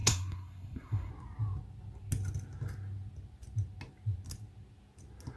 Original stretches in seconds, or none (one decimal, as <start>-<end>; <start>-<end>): 1.1-5.4